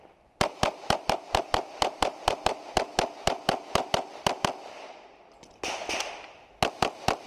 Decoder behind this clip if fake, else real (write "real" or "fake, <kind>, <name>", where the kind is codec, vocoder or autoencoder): real